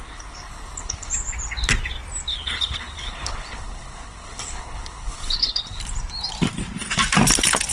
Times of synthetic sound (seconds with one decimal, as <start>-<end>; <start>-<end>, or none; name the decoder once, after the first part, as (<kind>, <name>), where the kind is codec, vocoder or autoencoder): 0.0-1.1 (codec, HILCodec); 2.3-5.8